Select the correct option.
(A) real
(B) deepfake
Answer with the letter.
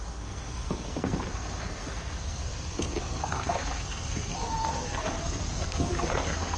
B